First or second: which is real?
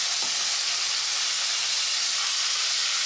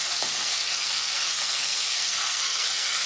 first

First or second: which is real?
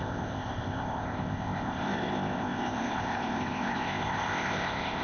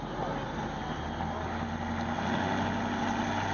second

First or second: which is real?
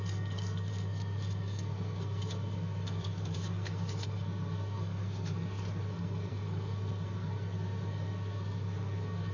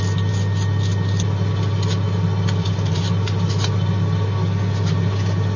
second